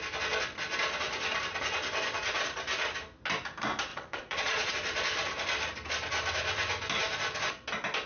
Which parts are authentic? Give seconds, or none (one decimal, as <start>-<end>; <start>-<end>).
0.0-3.9; 4.7-8.1